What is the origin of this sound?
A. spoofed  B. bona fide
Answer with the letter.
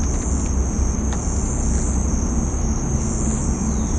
B